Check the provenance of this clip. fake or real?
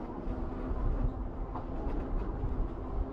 real